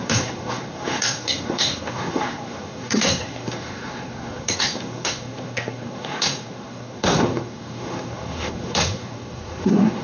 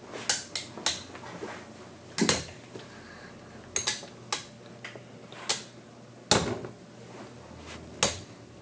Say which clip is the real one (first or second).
second